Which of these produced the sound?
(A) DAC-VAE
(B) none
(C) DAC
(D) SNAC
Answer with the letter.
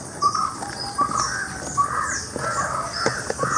B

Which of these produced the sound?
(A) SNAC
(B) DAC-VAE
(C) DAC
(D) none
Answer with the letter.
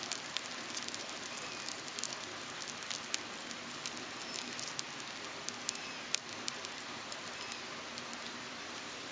D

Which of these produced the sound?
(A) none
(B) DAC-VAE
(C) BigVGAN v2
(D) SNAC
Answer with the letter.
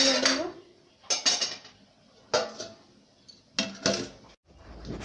A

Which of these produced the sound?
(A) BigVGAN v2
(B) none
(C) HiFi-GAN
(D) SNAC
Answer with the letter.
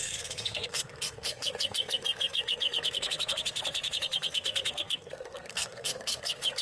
D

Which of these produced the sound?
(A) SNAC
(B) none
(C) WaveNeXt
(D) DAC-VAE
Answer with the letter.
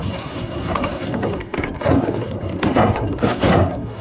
A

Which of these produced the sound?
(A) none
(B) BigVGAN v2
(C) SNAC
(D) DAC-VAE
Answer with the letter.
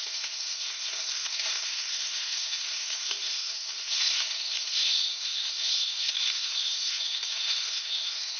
C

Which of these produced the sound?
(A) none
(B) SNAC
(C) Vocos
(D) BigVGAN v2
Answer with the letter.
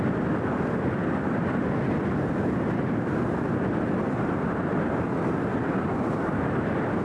A